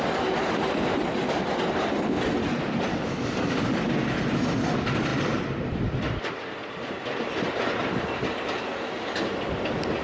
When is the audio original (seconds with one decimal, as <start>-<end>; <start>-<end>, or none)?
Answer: 0.0-2.9; 3.8-10.0